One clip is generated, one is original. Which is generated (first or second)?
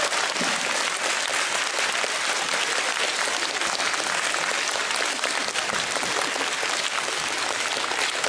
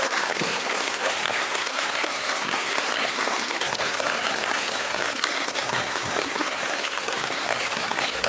second